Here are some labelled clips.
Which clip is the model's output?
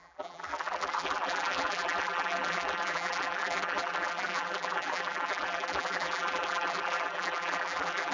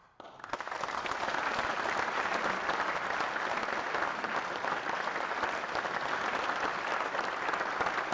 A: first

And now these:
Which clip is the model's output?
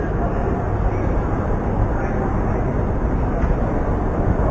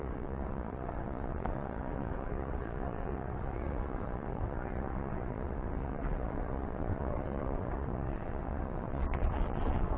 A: second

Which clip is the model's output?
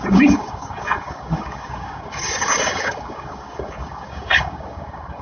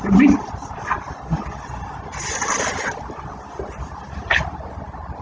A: first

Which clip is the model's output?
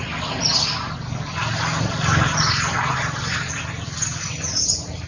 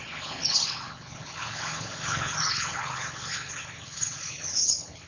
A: second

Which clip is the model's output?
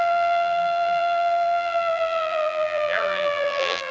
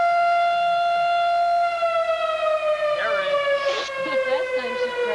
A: first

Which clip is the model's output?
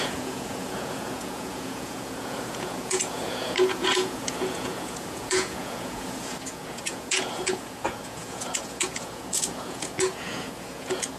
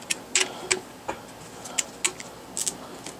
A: first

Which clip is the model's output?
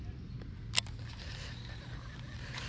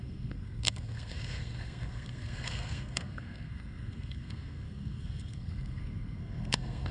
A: second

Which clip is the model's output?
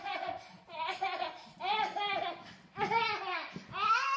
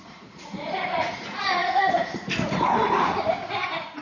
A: second